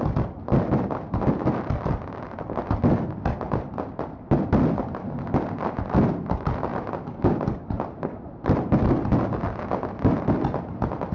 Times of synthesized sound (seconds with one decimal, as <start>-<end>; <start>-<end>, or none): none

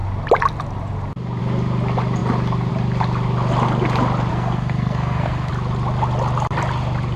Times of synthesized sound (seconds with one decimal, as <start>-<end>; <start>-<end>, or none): 4.3-5.5

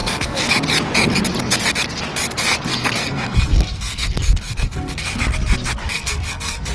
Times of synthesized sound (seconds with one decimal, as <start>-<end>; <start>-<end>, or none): 0.0-0.5; 2.7-5.2; 5.8-6.7

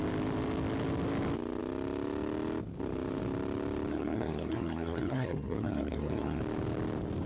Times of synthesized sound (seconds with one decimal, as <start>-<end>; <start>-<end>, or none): 3.9-6.4